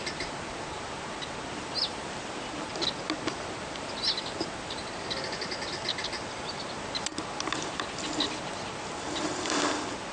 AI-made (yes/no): no